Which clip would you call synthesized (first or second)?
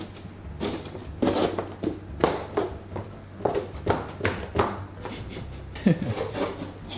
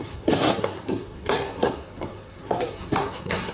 second